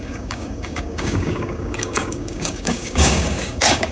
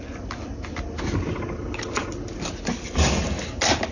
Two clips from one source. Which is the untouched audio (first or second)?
second